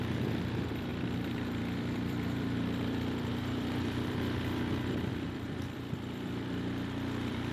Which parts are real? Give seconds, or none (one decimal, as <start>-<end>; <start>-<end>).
none